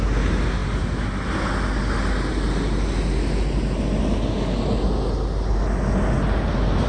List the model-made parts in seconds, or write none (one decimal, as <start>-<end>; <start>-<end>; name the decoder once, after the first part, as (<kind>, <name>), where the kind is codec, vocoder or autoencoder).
none